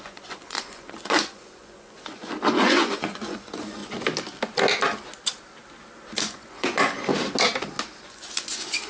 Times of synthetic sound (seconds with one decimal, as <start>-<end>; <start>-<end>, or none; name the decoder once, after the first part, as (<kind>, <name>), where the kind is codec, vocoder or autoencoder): 0.0-3.8 (vocoder, Vocos); 6.2-7.1; 8.0-8.9

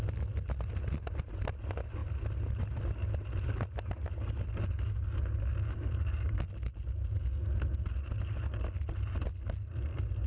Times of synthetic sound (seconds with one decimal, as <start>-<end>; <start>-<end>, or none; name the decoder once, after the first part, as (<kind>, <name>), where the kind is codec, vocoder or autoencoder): none

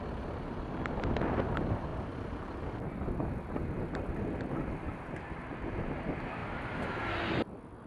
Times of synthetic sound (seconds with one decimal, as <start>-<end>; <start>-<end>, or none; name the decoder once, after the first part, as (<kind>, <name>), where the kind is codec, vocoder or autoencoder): none

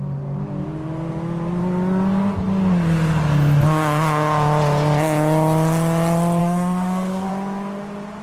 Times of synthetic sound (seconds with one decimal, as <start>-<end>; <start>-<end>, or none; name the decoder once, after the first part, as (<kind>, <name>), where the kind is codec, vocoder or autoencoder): 6.4-7.3 (codec, SNAC)

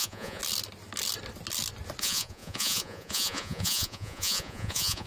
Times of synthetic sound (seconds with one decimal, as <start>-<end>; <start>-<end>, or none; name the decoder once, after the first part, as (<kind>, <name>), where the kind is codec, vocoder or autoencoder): 0.0-0.4 (vocoder, Vocos); 2.0-5.1

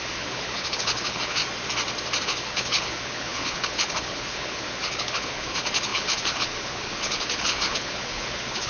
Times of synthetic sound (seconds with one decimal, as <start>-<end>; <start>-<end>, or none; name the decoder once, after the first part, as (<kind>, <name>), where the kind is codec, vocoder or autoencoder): 0.0-1.4 (codec, HILCodec); 2.2-8.7

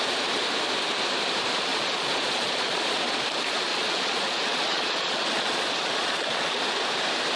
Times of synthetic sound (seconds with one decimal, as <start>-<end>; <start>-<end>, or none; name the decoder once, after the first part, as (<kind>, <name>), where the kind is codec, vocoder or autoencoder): 1.7-3.2 (vocoder, Vocos); 3.7-6.6